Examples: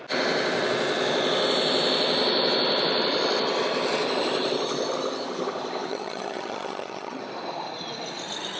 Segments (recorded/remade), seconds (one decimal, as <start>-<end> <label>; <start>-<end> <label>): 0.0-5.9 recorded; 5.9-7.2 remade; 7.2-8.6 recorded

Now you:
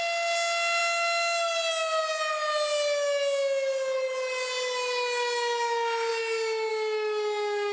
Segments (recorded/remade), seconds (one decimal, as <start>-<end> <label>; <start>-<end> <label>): 0.0-7.7 recorded

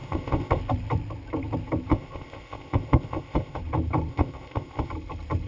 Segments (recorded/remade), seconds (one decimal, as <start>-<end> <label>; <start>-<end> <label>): 0.0-0.6 remade; 0.6-1.9 recorded; 1.9-3.6 remade; 3.6-4.1 recorded; 4.1-4.9 remade; 4.9-5.5 recorded

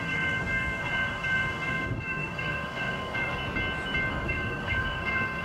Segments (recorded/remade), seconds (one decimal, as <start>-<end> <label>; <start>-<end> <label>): 0.0-3.4 remade; 3.4-4.1 recorded; 4.1-5.4 remade